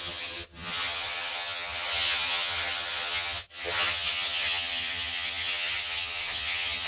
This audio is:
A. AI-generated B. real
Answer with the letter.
A